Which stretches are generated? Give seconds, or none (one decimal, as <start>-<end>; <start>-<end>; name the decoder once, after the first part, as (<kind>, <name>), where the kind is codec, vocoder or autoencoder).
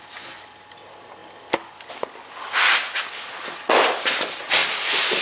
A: 4.6-5.2 (vocoder, BigVGAN v2)